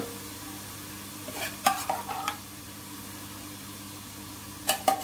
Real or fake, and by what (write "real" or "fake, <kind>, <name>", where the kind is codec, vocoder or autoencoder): real